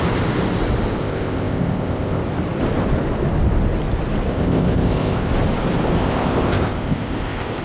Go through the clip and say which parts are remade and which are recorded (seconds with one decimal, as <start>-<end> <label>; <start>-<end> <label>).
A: 0.0-1.0 recorded; 1.0-2.2 remade; 2.2-4.3 recorded; 4.3-5.3 remade; 5.3-6.0 recorded; 6.0-7.6 remade